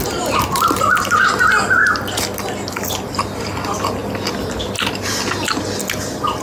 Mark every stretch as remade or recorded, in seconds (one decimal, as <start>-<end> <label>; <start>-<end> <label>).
0.0-6.4 recorded